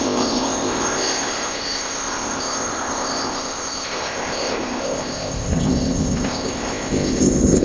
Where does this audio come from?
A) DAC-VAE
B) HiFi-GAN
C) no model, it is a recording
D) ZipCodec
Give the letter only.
D